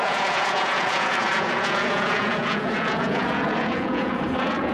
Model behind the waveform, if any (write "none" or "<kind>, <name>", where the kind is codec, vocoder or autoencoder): vocoder, Vocos